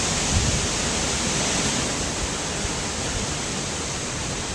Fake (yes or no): no